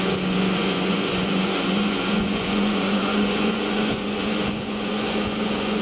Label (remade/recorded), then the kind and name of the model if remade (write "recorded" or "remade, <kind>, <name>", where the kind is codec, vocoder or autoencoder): remade, vocoder, Vocos